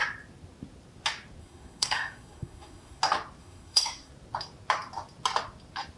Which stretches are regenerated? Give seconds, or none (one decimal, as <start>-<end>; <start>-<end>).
1.4-3.0; 3.4-4.1